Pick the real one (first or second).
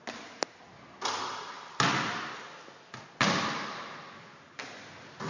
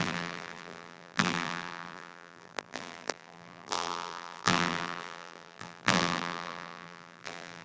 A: first